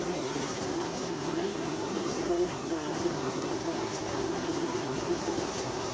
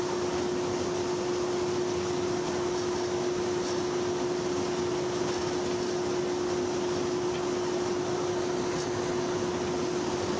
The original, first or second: second